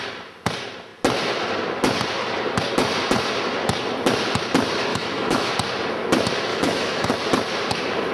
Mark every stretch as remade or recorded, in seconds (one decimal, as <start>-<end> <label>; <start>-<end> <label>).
0.0-4.9 recorded; 4.9-5.5 remade; 5.5-6.5 recorded; 6.5-7.1 remade; 7.1-8.1 recorded